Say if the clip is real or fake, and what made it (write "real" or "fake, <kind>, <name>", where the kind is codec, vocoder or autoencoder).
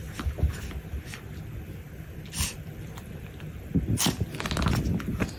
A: real